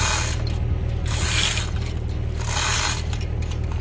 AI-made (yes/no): no